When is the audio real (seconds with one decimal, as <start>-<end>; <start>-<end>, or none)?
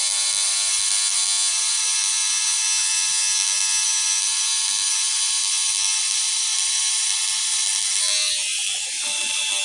0.0-9.6